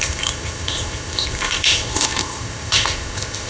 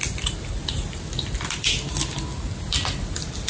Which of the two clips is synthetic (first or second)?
first